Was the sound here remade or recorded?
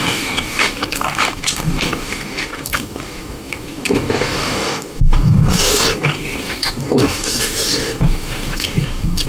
remade